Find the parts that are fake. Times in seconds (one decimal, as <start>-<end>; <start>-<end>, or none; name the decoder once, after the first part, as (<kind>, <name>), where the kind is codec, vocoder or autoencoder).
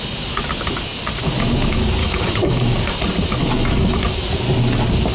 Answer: 2.0-2.8 (autoencoder, DAC-VAE); 3.4-4.1